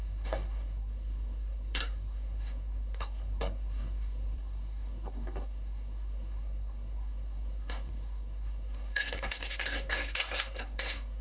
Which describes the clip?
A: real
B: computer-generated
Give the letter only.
B